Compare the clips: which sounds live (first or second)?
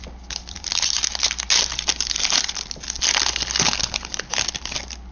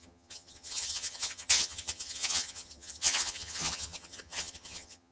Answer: first